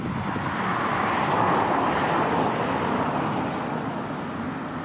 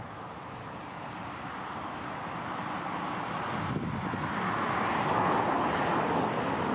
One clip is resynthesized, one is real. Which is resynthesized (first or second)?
first